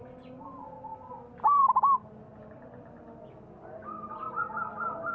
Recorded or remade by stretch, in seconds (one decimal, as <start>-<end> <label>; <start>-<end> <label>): 0.0-5.1 recorded